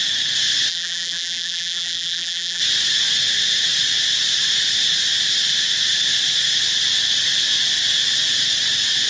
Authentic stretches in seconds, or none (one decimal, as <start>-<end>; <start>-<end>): 0.0-0.7; 2.6-9.1